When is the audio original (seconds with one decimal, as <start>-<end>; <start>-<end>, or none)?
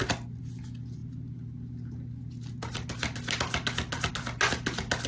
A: 0.0-5.1